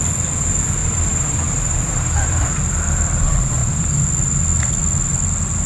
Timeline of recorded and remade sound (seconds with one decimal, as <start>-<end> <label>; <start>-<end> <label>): 0.0-0.8 recorded; 0.8-2.5 remade; 2.5-3.6 recorded; 3.6-4.1 remade; 4.1-5.7 recorded